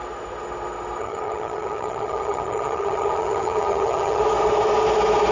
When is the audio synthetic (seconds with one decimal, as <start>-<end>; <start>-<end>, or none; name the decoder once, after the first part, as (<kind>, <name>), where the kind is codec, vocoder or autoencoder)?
1.0-4.2 (vocoder, HiFi-GAN)